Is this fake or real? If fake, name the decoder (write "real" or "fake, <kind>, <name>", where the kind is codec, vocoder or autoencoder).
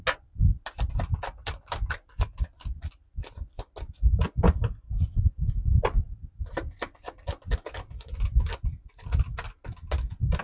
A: real